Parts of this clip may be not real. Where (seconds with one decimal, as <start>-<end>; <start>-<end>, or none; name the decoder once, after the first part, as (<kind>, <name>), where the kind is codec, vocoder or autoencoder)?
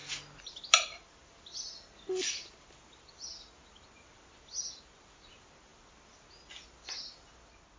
none